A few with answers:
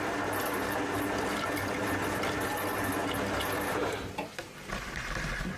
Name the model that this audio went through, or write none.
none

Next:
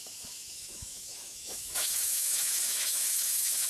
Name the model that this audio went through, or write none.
autoencoder, DAC-VAE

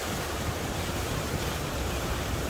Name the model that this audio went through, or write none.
none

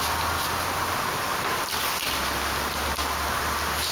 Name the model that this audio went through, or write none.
none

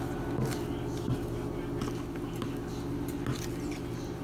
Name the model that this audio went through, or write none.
none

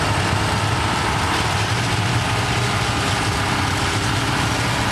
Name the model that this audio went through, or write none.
none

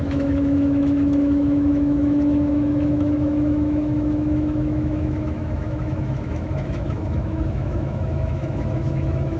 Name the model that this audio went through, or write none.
autoencoder, DAC-VAE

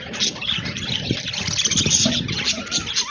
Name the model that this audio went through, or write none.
none